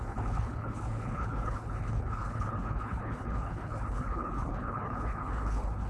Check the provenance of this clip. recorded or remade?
remade